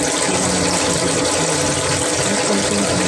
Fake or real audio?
real